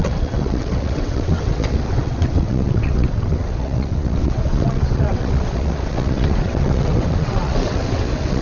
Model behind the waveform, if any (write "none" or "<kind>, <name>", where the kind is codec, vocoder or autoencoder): vocoder, WaveNeXt